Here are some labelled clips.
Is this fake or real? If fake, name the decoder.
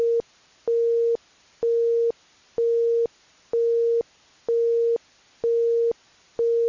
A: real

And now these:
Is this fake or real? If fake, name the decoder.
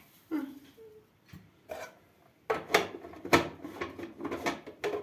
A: real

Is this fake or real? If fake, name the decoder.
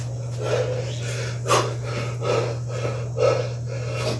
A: real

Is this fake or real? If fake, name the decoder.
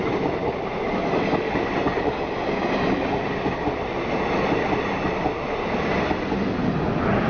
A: real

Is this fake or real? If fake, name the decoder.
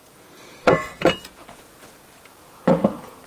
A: fake, vocoder, Vocos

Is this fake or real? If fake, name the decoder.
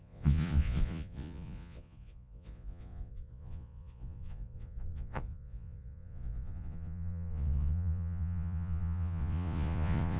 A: fake, vocoder, Vocos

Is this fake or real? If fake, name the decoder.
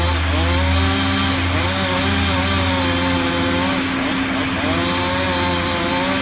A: real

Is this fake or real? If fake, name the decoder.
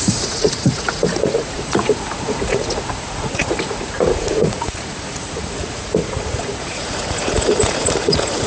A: fake, vocoder, Vocos